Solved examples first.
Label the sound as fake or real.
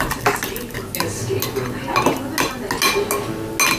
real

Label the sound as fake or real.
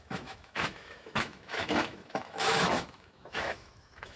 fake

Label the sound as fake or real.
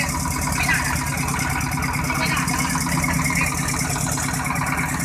real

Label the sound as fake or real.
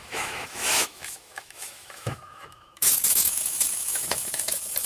fake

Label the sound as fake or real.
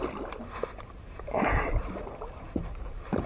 real